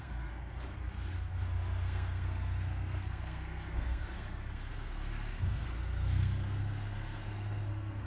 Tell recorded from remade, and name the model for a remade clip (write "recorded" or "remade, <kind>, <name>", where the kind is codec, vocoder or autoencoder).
remade, codec, SNAC